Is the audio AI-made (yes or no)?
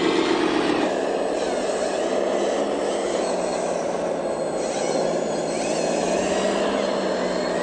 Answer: no